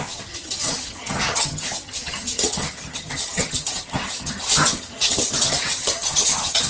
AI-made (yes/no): yes